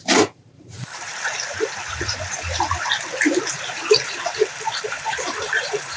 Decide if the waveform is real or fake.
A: fake